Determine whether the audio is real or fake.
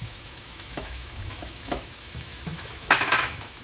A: fake